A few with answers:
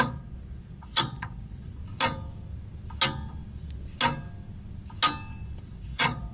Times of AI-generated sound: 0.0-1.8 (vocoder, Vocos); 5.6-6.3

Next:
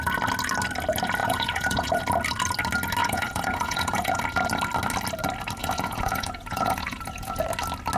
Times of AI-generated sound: 1.2-2.0 (vocoder, Vocos); 3.0-4.2; 5.6-7.4

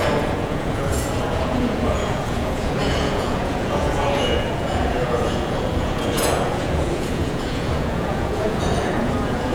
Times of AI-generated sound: 0.0-9.5 (vocoder, Vocos)

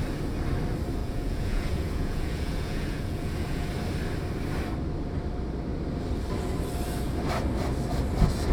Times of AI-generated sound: 1.0-3.7 (vocoder, Vocos)

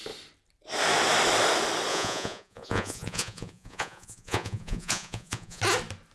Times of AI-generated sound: 1.9-5.6 (vocoder, Vocos)

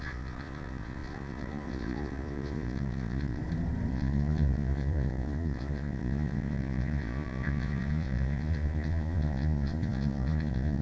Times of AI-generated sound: 0.0-3.4 (vocoder, Vocos); 3.9-10.8

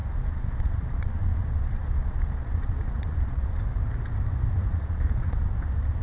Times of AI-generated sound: 0.0-3.6 (vocoder, Vocos); 4.7-5.5

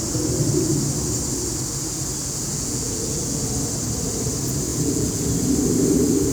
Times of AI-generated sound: 2.2-3.5 (vocoder, Vocos); 4.7-5.2